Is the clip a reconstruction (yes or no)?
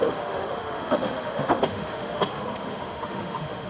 yes